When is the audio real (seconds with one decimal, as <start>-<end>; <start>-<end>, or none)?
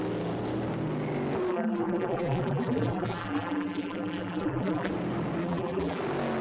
0.0-1.5; 4.9-5.4; 6.0-6.4